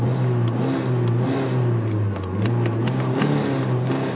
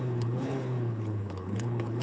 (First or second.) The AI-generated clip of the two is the second